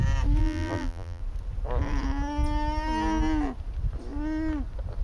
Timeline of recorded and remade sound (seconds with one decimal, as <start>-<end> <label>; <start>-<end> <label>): 0.0-0.4 recorded; 0.4-1.2 remade; 1.2-5.0 recorded